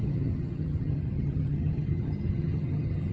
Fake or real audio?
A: fake